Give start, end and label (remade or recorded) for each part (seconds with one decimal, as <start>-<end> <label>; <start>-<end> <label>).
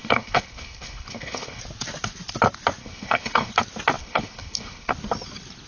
0.0-1.6 remade; 1.6-2.8 recorded; 2.8-3.5 remade; 3.5-4.0 recorded; 4.0-4.9 remade; 4.9-5.7 recorded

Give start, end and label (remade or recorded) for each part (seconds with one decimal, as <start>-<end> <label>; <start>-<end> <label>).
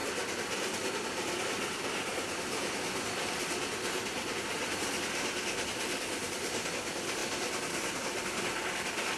0.0-9.2 recorded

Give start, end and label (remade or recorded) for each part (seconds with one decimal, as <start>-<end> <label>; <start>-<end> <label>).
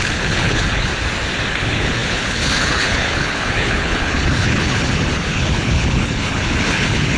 0.0-0.9 remade; 0.9-1.5 recorded; 1.5-7.2 remade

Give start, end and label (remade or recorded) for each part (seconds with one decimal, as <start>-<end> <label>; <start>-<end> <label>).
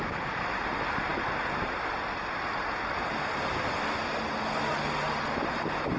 0.0-6.0 recorded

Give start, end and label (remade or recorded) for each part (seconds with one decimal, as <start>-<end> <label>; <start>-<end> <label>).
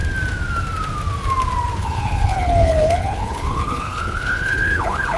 0.0-1.8 recorded; 1.8-5.2 remade